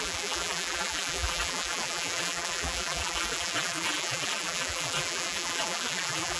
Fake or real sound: fake